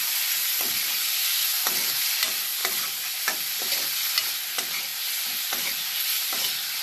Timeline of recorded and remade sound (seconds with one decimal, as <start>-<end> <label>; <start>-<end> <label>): 0.0-6.8 recorded